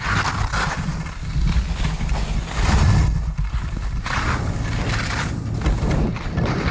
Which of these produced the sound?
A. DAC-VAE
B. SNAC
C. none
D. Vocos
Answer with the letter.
C